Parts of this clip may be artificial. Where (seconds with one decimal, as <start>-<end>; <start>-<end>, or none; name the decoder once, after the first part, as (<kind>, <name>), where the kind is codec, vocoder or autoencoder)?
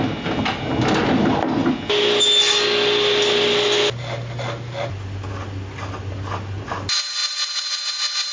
none